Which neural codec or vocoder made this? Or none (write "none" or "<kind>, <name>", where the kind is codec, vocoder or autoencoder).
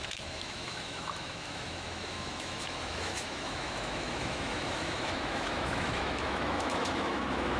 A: autoencoder, DAC-VAE